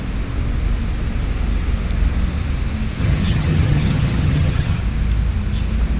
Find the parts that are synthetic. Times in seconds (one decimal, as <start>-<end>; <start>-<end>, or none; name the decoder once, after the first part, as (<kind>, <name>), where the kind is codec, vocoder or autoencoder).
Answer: 3.0-4.8 (vocoder, HiFi-GAN)